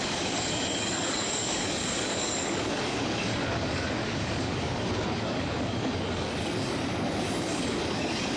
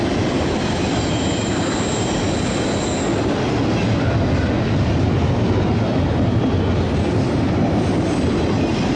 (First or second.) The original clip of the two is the second